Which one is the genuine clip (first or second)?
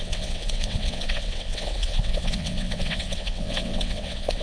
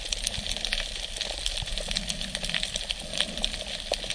second